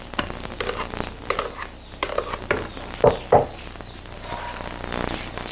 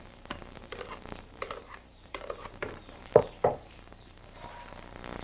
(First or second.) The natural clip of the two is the first